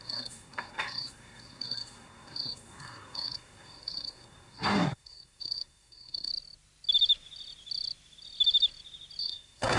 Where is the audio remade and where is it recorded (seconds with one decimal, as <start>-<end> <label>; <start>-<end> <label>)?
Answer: 0.0-6.3 remade; 6.3-9.2 recorded; 9.2-9.8 remade